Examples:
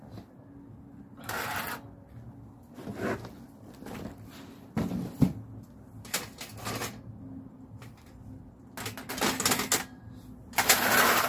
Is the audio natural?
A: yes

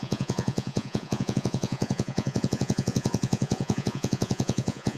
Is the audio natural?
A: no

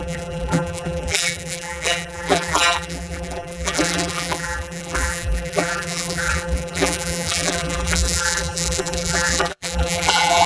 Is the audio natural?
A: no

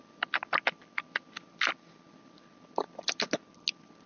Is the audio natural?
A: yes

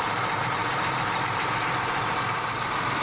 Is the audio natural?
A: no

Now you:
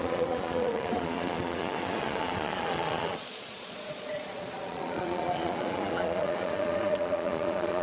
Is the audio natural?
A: no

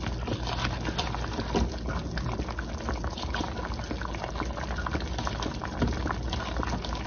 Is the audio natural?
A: yes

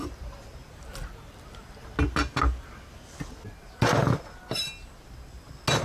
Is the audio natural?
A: yes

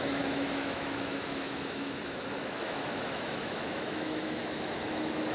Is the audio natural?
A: no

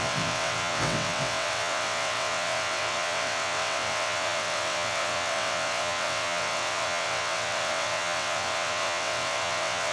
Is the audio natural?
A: no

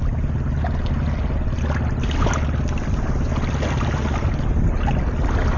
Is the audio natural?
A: yes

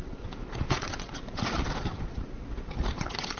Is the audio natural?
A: no